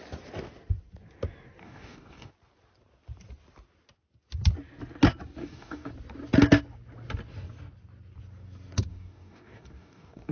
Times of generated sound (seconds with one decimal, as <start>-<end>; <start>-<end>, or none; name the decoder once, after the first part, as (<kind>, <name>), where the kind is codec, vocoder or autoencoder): 1.6-2.3 (codec, DAC); 5.4-5.9; 8.9-10.3